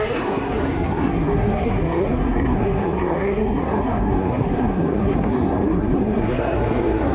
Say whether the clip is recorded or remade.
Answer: remade